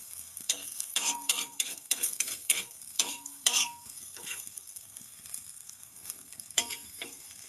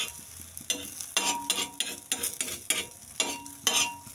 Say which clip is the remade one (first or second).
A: first